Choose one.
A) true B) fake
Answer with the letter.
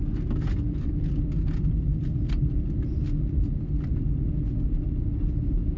A